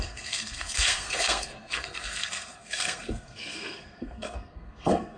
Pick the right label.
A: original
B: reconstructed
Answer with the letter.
B